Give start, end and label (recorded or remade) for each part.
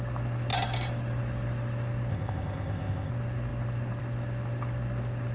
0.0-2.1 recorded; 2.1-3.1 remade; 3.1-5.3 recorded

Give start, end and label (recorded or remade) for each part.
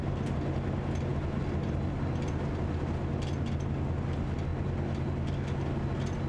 0.0-6.3 recorded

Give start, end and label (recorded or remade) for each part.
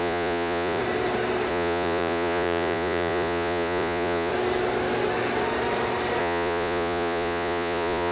0.0-0.8 remade; 0.8-1.5 recorded; 1.5-4.3 remade; 4.3-6.2 recorded; 6.2-8.1 remade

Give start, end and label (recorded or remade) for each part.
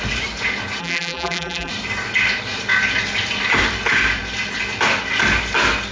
0.0-0.8 recorded; 0.8-1.7 remade; 1.7-5.9 recorded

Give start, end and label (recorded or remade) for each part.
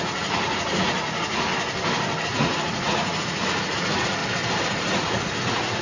0.0-1.5 remade; 1.5-2.2 recorded; 2.2-4.2 remade; 4.2-4.8 recorded; 4.8-5.8 remade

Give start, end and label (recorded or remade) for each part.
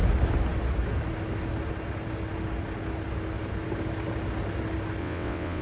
0.0-5.0 recorded; 5.0-5.6 remade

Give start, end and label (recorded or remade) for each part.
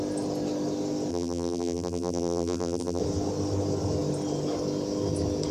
0.0-1.1 recorded; 1.1-3.0 remade; 3.0-5.5 recorded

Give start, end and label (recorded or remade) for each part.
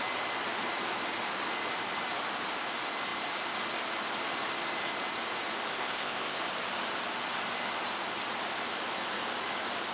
0.0-5.7 recorded; 5.7-6.4 remade; 6.4-9.9 recorded